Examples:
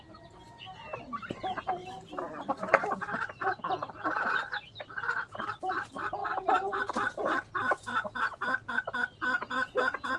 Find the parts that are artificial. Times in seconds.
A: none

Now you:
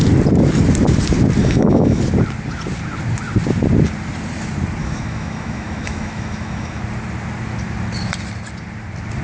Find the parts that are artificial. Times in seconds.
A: 1.4-2.0 (autoencoder, DAC-VAE); 4.8-6.8